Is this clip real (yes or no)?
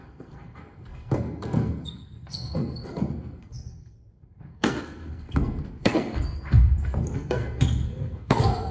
no